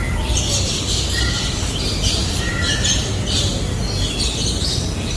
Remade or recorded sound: recorded